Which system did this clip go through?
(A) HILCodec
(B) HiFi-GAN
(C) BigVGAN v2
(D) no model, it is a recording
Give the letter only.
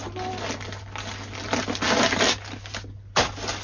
D